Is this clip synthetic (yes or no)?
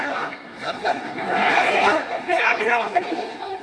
yes